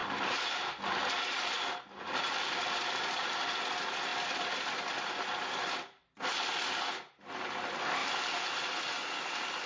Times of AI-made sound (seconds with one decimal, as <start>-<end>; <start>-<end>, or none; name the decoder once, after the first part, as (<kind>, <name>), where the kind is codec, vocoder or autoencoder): 0.0-3.3 (vocoder, BigVGAN v2); 8.0-8.7

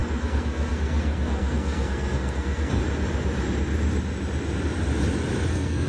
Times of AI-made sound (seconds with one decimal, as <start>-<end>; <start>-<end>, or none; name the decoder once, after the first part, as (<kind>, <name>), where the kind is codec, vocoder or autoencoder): 0.0-2.8 (codec, SNAC); 5.5-5.9

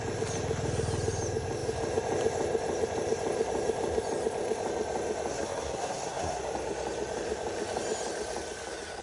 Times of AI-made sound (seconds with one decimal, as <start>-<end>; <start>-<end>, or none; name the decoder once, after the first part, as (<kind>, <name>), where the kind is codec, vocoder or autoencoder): 5.3-6.4 (codec, SNAC)